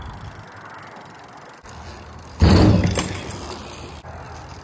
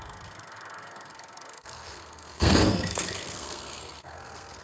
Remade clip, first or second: second